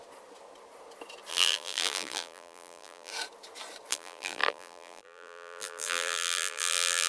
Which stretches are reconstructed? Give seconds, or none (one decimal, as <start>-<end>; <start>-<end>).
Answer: 1.3-3.1; 3.9-7.1